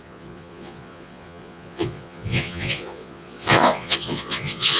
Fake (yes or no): yes